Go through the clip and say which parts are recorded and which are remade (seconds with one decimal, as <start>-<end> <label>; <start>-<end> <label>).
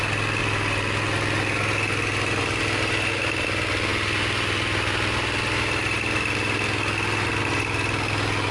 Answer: 0.0-8.5 recorded